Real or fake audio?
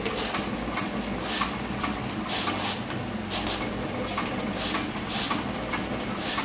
real